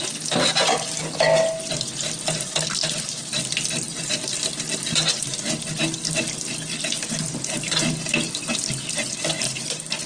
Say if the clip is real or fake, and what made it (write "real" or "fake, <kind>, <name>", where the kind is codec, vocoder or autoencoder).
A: real